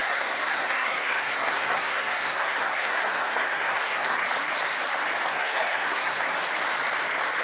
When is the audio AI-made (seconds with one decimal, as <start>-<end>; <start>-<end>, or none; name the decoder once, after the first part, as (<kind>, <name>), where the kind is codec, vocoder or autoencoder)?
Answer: 0.0-4.2 (codec, SNAC); 5.3-6.2